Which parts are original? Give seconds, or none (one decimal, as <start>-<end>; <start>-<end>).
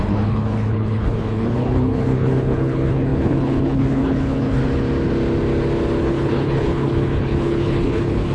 4.6-6.0